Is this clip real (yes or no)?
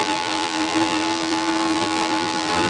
no